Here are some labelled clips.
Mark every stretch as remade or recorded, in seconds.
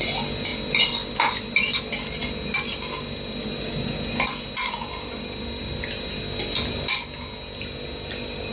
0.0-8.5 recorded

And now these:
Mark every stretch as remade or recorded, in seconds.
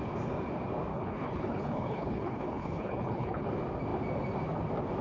0.0-0.9 recorded; 0.9-3.5 remade; 3.5-5.0 recorded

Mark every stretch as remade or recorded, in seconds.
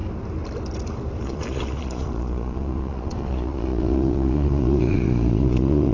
0.0-1.2 recorded; 1.2-5.9 remade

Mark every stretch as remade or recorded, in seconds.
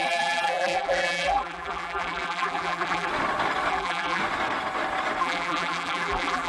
0.0-3.1 remade; 3.1-3.7 recorded; 3.7-4.2 remade; 4.2-5.2 recorded; 5.2-6.5 remade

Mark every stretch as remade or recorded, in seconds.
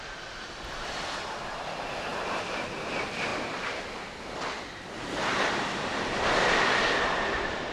0.0-2.1 recorded; 2.1-2.9 remade; 2.9-3.3 recorded; 3.3-3.9 remade; 3.9-7.7 recorded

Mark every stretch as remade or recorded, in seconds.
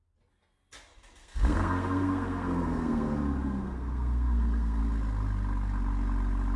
0.0-1.2 recorded; 1.2-4.8 remade; 4.8-6.6 recorded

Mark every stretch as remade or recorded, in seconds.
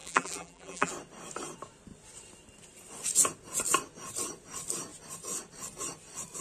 0.0-0.9 remade; 0.9-6.4 recorded